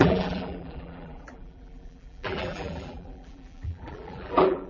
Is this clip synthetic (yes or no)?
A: yes